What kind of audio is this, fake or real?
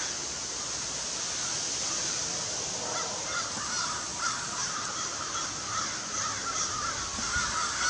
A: real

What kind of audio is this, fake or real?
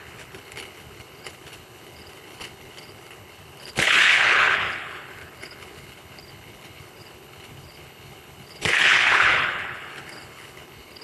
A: fake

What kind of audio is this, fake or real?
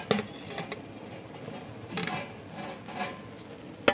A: real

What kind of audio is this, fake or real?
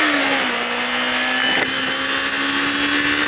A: real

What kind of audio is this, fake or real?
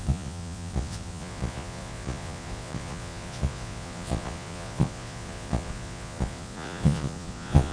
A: fake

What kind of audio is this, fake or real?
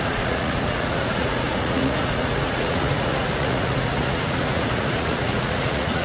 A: fake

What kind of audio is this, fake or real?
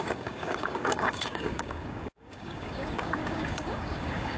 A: fake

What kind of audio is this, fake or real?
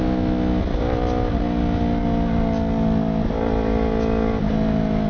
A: real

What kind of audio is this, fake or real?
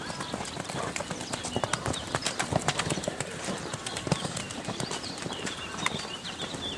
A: fake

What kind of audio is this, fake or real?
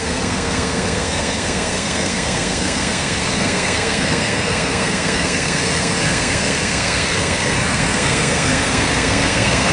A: fake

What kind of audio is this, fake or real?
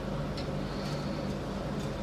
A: real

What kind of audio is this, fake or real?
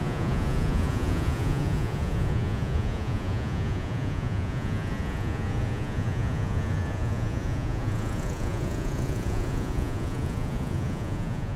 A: fake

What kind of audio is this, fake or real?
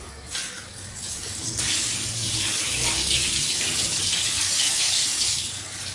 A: fake